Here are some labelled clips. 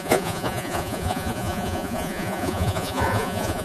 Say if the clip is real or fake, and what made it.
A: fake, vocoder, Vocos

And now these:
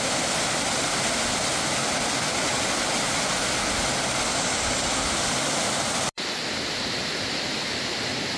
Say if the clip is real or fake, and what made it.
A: real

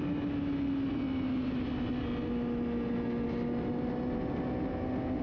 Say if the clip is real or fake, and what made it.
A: real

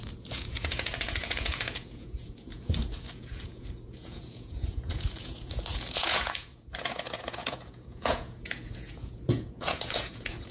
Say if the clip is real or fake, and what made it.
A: fake, vocoder, Vocos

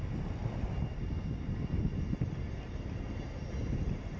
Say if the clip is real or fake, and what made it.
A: real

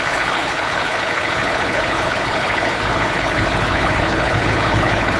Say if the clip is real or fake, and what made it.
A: fake, codec, HILCodec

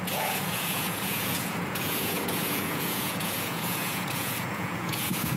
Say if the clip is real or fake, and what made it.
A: fake, vocoder, Vocos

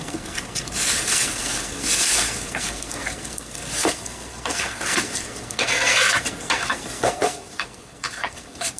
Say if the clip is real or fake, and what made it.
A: fake, codec, SNAC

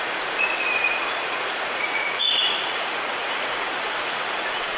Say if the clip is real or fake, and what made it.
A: fake, vocoder, Vocos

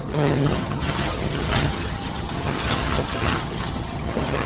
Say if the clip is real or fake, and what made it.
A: fake, vocoder, HiFi-GAN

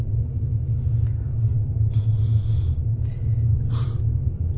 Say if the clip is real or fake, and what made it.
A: real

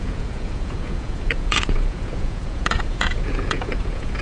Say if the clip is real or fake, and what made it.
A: fake, vocoder, Vocos